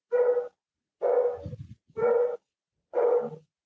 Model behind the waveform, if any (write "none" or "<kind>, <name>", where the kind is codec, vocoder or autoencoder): none